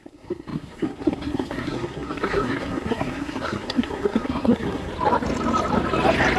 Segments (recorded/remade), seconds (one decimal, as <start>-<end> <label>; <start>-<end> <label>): 0.0-4.9 remade; 4.9-6.4 recorded